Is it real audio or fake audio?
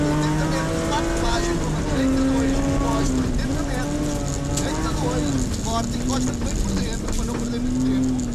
real